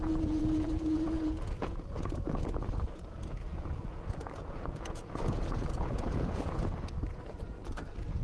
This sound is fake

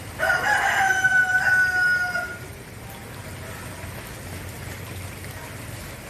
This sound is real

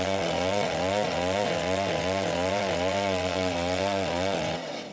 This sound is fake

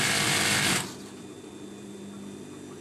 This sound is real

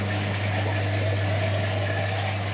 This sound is real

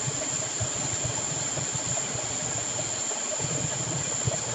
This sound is real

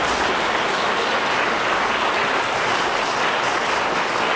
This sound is real